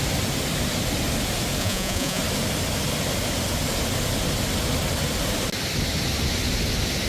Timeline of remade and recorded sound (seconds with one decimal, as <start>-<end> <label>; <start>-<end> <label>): 0.0-1.6 recorded; 1.6-2.2 remade; 2.2-7.1 recorded